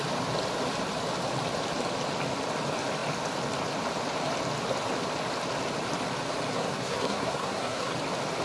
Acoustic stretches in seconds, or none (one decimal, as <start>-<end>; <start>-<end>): 0.0-6.5; 7.9-8.4